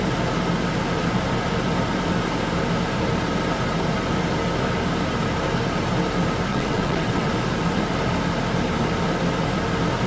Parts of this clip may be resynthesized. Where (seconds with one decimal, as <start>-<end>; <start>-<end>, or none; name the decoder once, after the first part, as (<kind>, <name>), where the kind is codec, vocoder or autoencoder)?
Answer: 6.5-7.3 (vocoder, WaveNeXt)